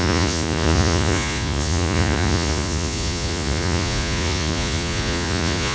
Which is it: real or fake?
fake